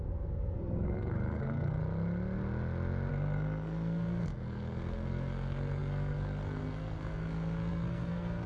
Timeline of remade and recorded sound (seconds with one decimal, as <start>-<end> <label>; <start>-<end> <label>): 0.0-1.8 remade; 1.8-3.1 recorded; 3.1-8.5 remade